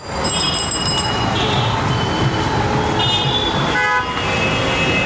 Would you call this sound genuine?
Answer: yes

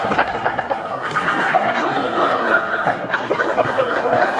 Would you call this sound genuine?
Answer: no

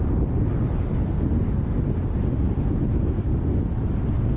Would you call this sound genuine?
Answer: yes